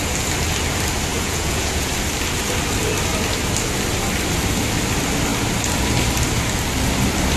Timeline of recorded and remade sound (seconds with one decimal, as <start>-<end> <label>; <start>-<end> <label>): 0.0-1.1 recorded; 1.1-1.9 remade; 1.9-7.4 recorded